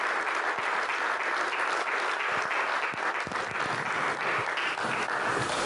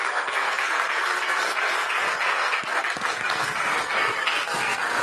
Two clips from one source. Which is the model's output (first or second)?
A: second